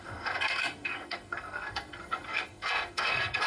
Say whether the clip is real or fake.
fake